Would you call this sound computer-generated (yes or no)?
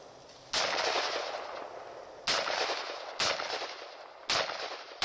no